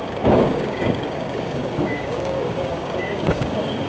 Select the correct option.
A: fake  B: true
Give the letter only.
A